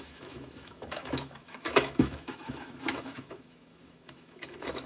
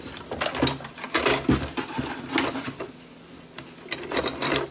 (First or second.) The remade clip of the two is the first